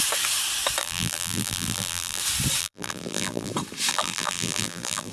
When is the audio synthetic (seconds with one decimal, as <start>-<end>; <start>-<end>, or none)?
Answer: 0.8-2.2; 2.6-3.5; 3.9-5.1